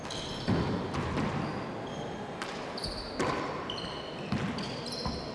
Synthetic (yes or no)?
no